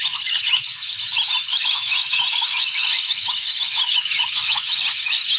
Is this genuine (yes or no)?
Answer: no